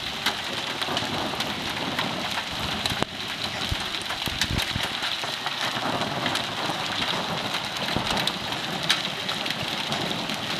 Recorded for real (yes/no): yes